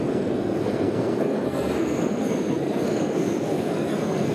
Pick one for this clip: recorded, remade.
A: remade